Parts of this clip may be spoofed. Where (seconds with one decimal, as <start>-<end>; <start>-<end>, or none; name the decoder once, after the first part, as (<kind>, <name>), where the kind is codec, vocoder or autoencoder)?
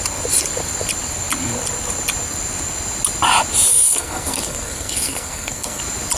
3.7-5.8 (codec, SNAC)